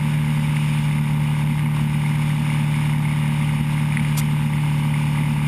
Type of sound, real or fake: real